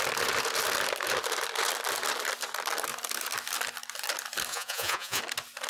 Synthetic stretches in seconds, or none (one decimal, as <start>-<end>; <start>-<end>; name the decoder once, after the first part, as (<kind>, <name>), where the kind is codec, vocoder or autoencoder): 4.5-5.2 (vocoder, Vocos)